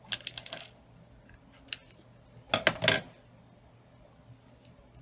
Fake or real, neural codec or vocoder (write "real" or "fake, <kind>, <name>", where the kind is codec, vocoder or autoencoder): real